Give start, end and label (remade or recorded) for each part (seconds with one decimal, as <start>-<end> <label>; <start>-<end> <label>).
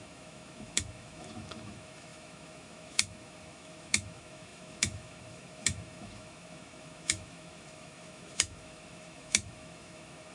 0.0-10.3 remade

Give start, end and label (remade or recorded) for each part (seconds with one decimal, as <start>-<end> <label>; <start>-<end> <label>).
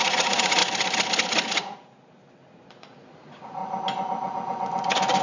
0.0-0.6 remade; 0.6-1.6 recorded; 1.6-3.6 remade; 3.6-5.2 recorded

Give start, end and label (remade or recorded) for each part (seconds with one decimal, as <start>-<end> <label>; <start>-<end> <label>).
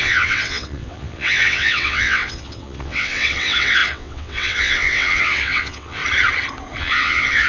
0.0-6.0 remade; 6.0-6.8 recorded; 6.8-7.5 remade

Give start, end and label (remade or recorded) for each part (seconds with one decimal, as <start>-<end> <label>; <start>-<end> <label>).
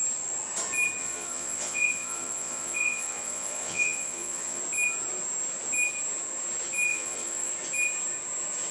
0.0-1.0 recorded; 1.0-4.6 remade; 4.6-6.9 recorded; 6.9-7.5 remade; 7.5-8.7 recorded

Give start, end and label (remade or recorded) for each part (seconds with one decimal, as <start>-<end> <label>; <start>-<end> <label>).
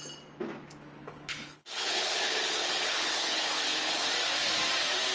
0.0-1.0 recorded; 1.0-4.1 remade; 4.1-5.1 recorded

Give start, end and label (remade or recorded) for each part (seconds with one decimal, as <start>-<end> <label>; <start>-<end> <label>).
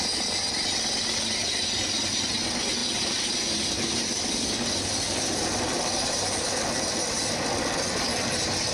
0.0-8.7 recorded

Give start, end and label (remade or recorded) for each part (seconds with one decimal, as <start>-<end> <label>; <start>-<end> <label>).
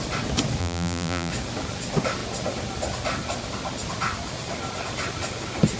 0.0-0.6 recorded; 0.6-1.3 remade; 1.3-5.8 recorded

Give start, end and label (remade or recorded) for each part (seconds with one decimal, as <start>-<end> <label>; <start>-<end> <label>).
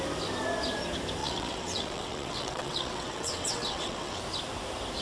0.0-1.2 recorded; 1.2-4.2 remade; 4.2-5.0 recorded